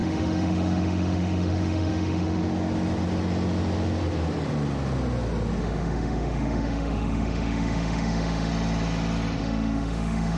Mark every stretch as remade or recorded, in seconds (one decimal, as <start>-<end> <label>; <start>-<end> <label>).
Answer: 0.0-2.4 remade; 2.4-5.6 recorded; 5.6-8.5 remade; 8.5-9.4 recorded; 9.4-10.4 remade